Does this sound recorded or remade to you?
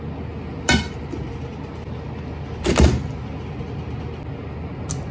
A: recorded